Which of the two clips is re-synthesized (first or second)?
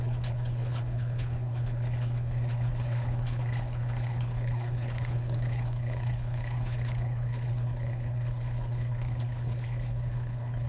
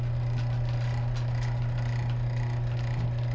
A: first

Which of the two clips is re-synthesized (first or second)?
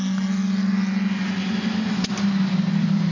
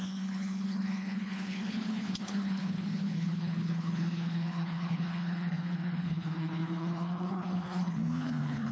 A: second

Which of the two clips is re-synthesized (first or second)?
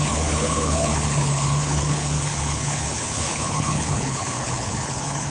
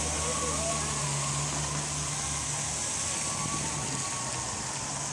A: first